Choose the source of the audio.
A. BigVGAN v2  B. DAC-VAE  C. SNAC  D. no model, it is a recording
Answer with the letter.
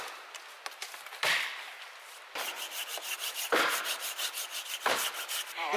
A